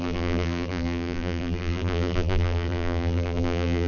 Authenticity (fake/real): fake